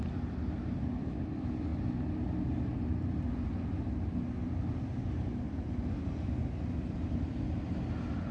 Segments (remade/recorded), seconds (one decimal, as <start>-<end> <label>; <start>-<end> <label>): 0.0-8.3 recorded